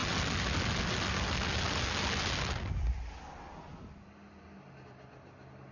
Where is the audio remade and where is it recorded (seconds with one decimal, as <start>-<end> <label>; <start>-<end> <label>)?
0.0-5.7 recorded